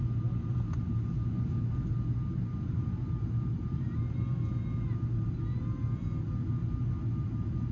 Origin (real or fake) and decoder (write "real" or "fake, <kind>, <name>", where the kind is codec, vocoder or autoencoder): real